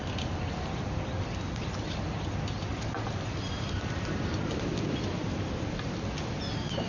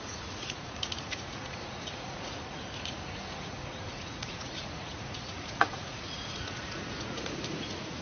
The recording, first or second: first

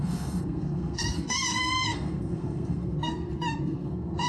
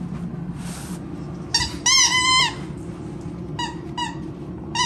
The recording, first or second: second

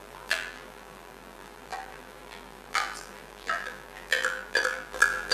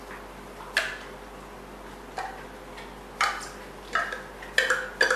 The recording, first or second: second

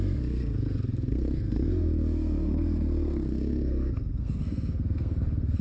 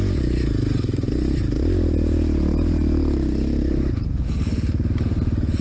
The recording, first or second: second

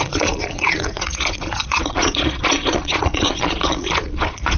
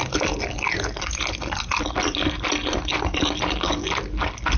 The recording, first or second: second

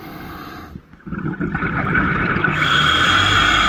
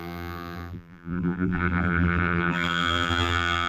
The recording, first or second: first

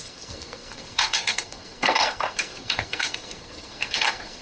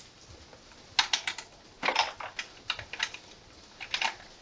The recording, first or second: second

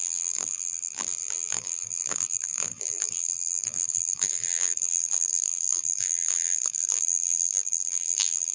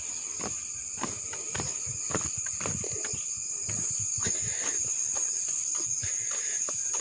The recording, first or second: second